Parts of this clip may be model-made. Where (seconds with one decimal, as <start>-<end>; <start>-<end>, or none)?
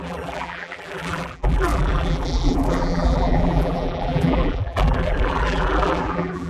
0.0-6.5